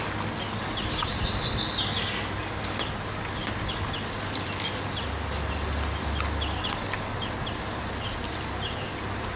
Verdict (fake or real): real